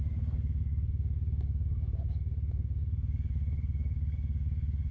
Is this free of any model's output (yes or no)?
no